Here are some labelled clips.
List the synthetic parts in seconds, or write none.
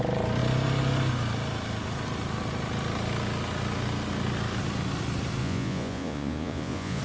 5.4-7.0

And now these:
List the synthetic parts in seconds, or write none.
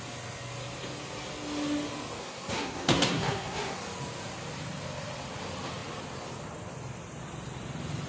2.2-3.8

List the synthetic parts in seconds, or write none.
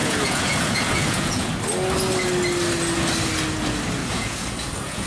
0.0-1.5; 4.0-5.1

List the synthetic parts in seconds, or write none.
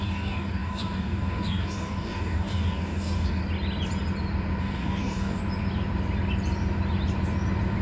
0.0-3.4; 4.6-5.4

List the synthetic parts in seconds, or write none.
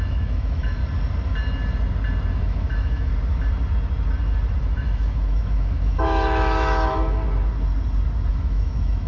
0.0-0.8; 2.3-3.1; 4.6-7.2; 8.3-9.1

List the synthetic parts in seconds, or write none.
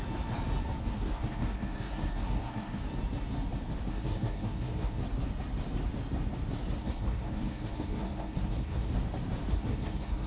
0.8-2.8; 3.9-5.0; 6.8-8.9; 9.5-10.3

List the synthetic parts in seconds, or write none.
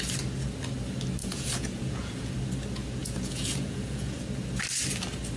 1.2-2.3; 3.0-4.2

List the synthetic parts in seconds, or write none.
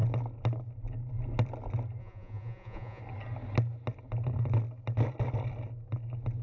2.0-3.0